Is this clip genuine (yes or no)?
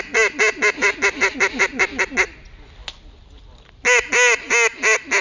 yes